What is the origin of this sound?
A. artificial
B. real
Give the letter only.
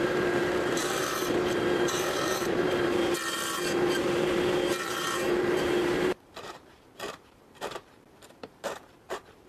A